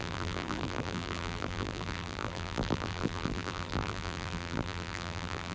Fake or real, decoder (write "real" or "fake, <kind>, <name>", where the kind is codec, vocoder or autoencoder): fake, vocoder, BigVGAN v2